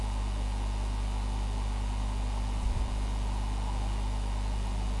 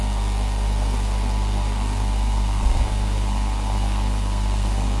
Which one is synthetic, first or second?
second